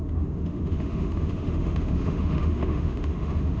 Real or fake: fake